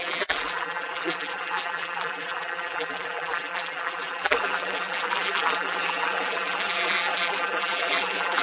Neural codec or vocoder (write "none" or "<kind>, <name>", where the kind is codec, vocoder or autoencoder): vocoder, BigVGAN v2